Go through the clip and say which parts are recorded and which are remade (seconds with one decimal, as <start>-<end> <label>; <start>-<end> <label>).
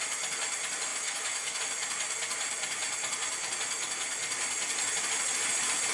0.0-0.9 recorded; 0.9-1.6 remade; 1.6-5.9 recorded